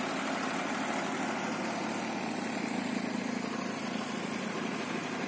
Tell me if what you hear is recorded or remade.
recorded